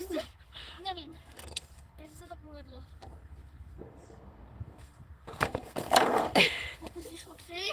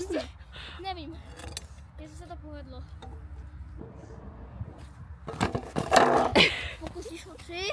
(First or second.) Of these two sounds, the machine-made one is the first